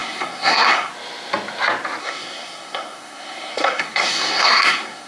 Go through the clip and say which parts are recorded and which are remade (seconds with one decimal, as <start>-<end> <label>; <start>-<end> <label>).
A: 0.0-0.9 remade; 0.9-2.0 recorded; 2.0-5.1 remade